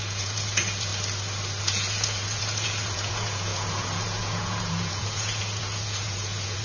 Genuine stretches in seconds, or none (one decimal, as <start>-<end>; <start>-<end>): 0.9-1.6

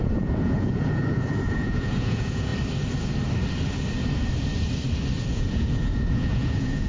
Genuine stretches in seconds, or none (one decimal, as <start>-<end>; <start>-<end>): 2.5-5.3